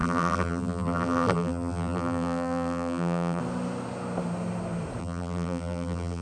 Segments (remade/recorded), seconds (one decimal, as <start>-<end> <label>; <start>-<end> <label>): 0.0-3.4 remade; 3.4-5.0 recorded; 5.0-6.2 remade